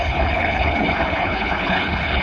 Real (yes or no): no